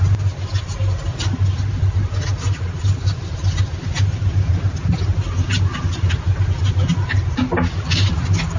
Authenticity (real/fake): real